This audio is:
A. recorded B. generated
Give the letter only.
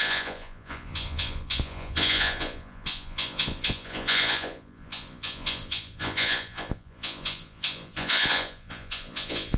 B